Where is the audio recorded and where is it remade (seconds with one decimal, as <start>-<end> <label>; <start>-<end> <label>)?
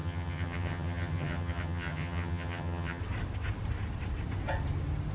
0.0-3.0 remade; 3.0-5.1 recorded